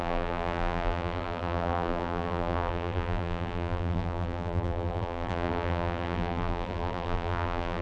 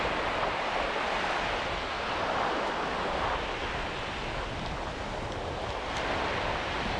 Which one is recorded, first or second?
second